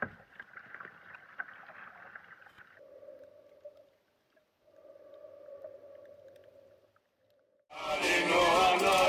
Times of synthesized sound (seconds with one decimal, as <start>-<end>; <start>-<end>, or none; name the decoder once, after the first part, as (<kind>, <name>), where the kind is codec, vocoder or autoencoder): none